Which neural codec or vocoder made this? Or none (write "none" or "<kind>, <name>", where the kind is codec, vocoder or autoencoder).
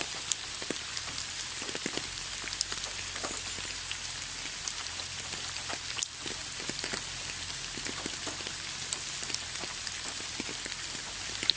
none